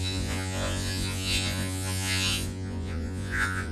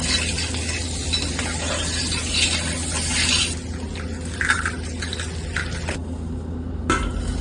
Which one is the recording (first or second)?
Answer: second